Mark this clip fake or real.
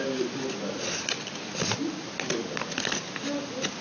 real